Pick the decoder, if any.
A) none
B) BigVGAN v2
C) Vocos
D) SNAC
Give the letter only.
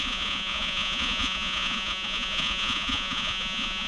C